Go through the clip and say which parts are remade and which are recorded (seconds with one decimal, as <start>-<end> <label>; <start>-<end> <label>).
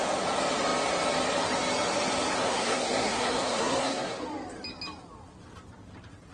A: 0.0-2.3 recorded; 2.3-4.2 remade; 4.2-6.3 recorded